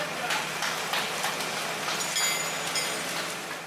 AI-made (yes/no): no